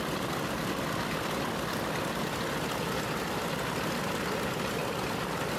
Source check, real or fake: real